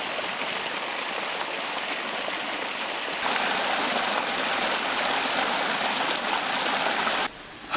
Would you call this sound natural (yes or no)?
yes